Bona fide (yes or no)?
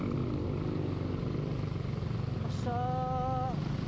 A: yes